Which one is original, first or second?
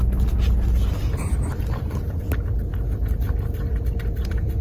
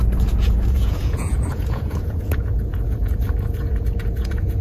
first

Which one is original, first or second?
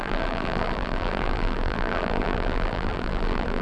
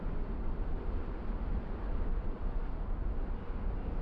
second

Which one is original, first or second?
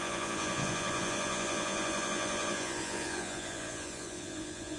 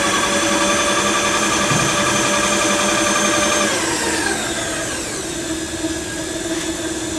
second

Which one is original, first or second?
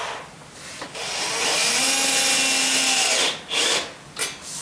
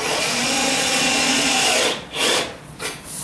first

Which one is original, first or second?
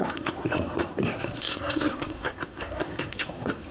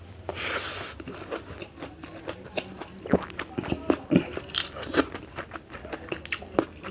second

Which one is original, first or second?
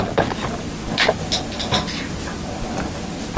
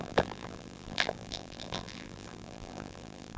first